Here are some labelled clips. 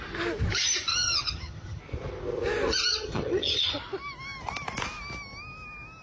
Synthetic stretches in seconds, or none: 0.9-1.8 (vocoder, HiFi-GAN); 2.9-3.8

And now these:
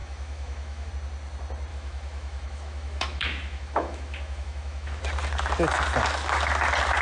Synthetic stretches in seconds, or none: 0.0-0.9 (autoencoder, DAC-VAE); 1.7-5.0

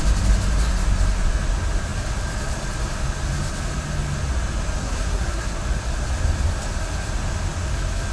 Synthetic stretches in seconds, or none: 4.8-5.5 (codec, SNAC)

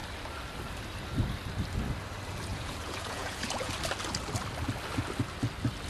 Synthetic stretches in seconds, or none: 2.5-3.7 (vocoder, Vocos)

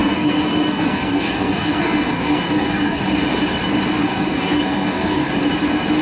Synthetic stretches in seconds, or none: 0.0-3.0 (codec, SNAC); 4.0-5.3

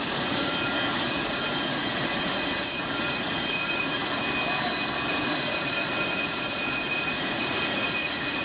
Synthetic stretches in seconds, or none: 0.0-4.2 (vocoder, Vocos); 5.1-8.4

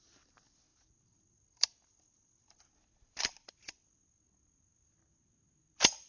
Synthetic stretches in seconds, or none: 0.7-4.2 (vocoder, BigVGAN v2)